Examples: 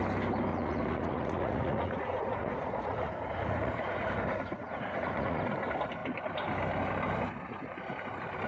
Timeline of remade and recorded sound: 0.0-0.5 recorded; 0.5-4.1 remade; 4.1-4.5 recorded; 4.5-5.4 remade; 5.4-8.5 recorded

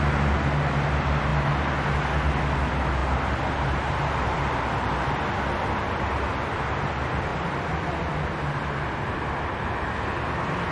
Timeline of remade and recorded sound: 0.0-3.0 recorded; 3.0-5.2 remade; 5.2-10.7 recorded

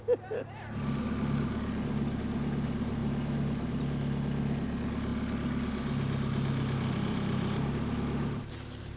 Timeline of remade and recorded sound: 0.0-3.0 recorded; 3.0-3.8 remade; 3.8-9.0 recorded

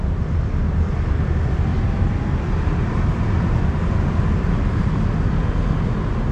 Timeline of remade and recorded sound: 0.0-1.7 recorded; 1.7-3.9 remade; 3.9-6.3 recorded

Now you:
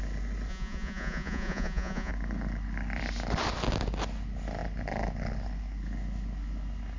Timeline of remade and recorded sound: 0.0-0.5 recorded; 0.5-2.1 remade; 2.1-7.0 recorded